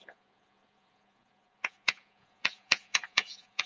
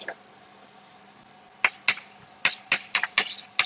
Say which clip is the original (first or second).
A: second